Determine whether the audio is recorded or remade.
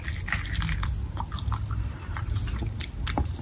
recorded